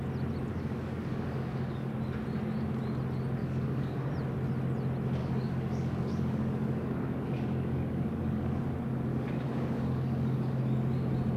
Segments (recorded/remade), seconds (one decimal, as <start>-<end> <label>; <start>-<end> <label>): 0.0-0.5 recorded; 0.5-1.9 remade; 1.9-3.4 recorded; 3.4-4.1 remade; 4.1-5.2 recorded; 5.2-8.6 remade; 8.6-9.1 recorded; 9.1-10.6 remade; 10.6-11.4 recorded